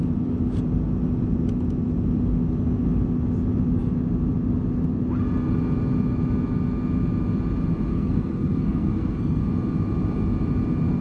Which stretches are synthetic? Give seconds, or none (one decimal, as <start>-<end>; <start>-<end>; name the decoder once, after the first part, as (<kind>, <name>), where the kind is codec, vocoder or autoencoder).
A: 7.9-9.4 (codec, SNAC)